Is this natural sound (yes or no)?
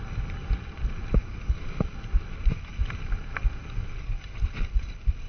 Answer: yes